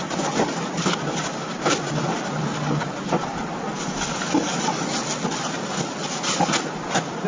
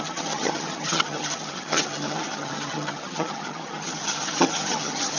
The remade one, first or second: second